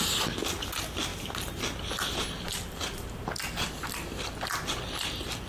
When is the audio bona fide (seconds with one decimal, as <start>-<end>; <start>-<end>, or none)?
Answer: 0.0-5.5